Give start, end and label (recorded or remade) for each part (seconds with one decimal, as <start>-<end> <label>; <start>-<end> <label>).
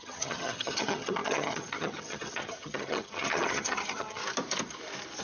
0.0-4.2 remade; 4.2-5.2 recorded